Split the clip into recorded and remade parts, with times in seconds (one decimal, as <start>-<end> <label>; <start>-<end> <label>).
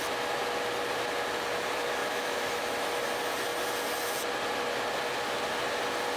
0.0-2.0 recorded; 2.0-2.9 remade; 2.9-6.2 recorded